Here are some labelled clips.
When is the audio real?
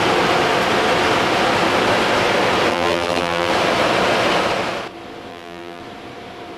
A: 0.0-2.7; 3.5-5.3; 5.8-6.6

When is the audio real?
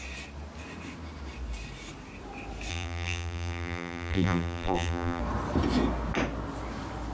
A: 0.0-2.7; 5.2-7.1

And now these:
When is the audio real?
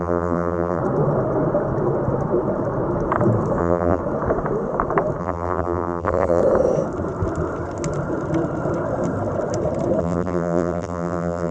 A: 0.8-3.6; 4.0-5.2; 6.4-10.0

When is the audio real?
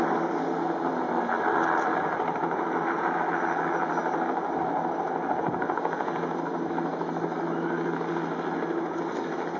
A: 0.0-1.9; 3.2-9.6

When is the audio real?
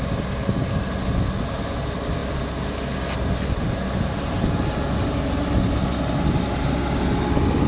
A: 0.0-7.7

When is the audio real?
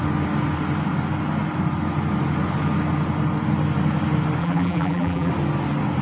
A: 0.0-4.4; 5.3-6.0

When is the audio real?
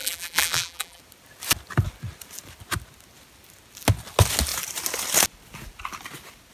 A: 1.0-6.5